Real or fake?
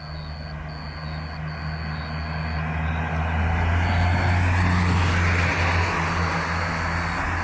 real